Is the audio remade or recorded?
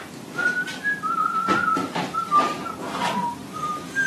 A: recorded